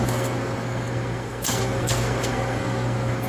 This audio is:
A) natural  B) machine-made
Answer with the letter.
B